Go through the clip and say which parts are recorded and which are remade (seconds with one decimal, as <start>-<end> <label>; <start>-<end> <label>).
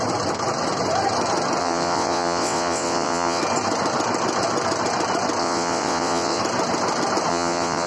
0.0-1.6 recorded; 1.6-3.4 remade; 3.4-5.4 recorded; 5.4-6.4 remade; 6.4-7.3 recorded; 7.3-7.9 remade